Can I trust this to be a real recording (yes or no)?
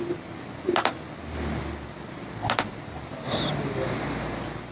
yes